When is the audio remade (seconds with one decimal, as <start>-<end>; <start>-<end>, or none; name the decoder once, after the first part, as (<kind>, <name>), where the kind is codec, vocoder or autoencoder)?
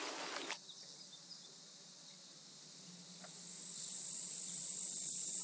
none